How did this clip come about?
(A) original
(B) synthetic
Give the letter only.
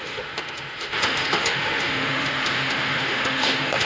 B